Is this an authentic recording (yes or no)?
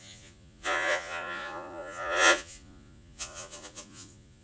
no